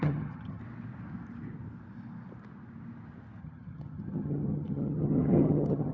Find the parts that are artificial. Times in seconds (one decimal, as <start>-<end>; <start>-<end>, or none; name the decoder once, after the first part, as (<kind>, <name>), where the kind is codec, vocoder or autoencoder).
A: 0.0-0.6 (vocoder, HiFi-GAN); 3.4-5.9